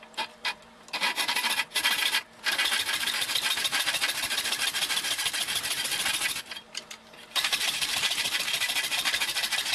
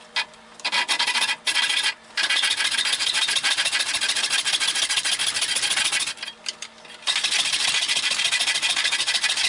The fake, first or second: first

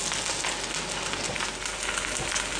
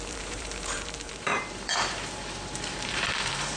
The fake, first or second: second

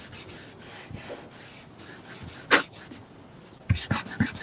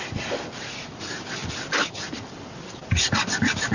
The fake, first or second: second